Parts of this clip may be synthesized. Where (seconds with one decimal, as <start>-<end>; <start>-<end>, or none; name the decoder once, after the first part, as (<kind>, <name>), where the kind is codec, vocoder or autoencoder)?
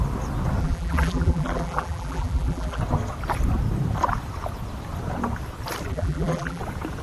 0.6-2.8 (vocoder, BigVGAN v2); 5.9-6.6